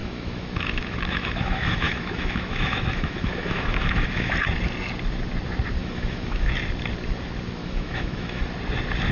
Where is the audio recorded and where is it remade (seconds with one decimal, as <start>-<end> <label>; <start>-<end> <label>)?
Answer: 0.0-4.3 remade; 4.3-5.8 recorded; 5.8-6.5 remade; 6.5-7.6 recorded; 7.6-8.4 remade; 8.4-9.1 recorded

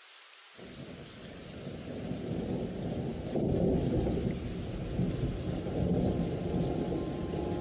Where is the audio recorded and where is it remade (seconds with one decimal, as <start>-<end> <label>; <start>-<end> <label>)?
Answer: 0.0-7.6 recorded

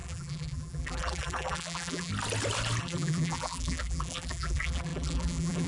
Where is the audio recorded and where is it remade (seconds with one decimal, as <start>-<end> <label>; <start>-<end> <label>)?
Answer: 0.0-2.1 remade; 2.1-2.8 recorded; 2.8-5.7 remade

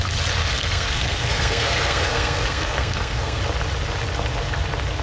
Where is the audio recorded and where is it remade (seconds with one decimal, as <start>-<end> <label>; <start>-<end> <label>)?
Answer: 0.0-0.4 recorded; 0.4-3.4 remade; 3.4-5.0 recorded

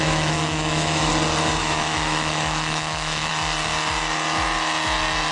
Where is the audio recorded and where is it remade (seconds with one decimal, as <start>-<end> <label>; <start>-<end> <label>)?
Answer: 0.0-1.1 remade; 1.1-1.6 recorded; 1.6-3.3 remade; 3.3-5.3 recorded